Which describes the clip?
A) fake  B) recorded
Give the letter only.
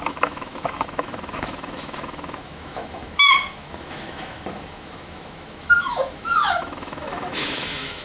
A